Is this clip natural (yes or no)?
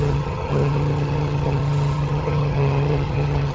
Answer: no